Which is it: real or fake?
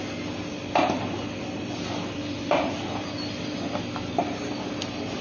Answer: real